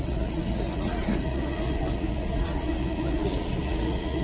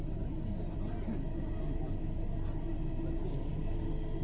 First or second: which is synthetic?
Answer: first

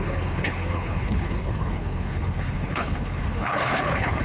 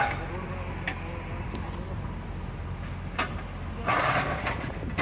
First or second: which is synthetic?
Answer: first